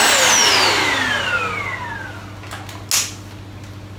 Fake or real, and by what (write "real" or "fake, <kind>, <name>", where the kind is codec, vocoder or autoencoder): real